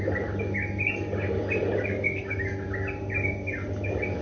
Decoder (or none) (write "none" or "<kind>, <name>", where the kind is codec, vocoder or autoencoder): none